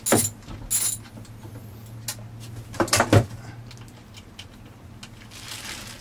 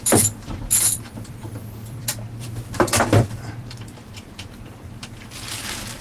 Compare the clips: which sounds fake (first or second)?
second